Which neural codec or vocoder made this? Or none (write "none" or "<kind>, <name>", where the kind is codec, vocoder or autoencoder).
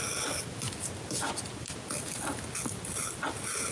none